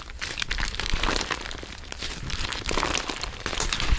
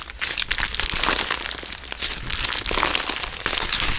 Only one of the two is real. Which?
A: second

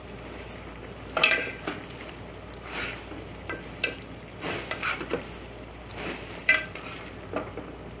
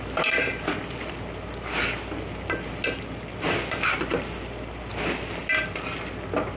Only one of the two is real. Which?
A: second